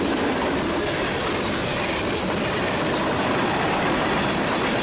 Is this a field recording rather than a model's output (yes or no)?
yes